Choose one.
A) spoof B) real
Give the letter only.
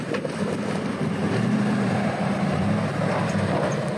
A